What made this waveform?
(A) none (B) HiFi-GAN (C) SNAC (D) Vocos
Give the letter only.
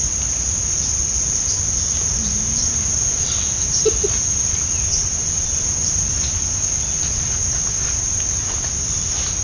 A